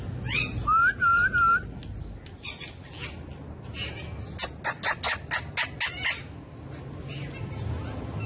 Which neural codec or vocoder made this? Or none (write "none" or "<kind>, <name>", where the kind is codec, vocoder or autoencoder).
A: none